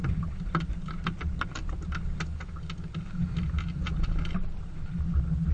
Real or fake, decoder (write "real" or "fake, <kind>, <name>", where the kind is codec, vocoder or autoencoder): real